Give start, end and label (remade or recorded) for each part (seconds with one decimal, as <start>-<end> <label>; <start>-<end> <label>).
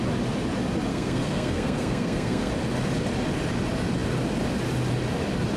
0.0-0.9 recorded; 0.9-2.5 remade; 2.5-5.6 recorded